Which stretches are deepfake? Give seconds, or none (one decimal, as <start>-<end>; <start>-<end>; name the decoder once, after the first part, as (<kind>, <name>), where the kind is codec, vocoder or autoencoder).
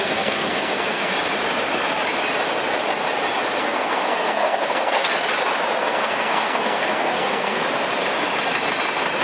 0.0-1.1 (codec, SNAC); 3.6-5.1; 5.8-7.6